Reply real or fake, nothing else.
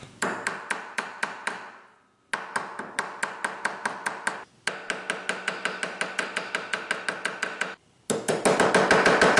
real